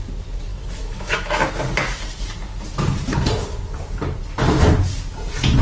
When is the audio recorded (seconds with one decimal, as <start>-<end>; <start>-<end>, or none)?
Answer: 0.0-0.5; 1.5-5.6